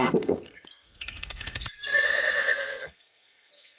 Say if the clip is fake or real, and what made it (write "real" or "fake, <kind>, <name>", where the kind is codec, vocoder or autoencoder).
fake, codec, SNAC